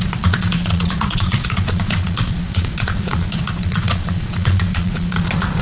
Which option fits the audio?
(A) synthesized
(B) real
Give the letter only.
A